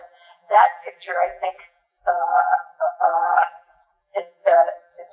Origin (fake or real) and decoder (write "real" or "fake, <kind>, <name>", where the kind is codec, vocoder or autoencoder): fake, vocoder, BigVGAN v2